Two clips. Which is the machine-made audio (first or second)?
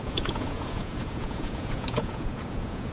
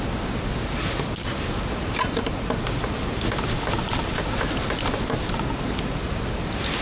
first